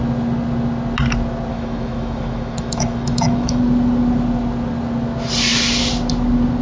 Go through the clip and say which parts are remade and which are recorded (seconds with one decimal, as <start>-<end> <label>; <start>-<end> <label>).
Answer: 0.0-1.5 recorded; 1.5-3.6 remade; 3.6-6.6 recorded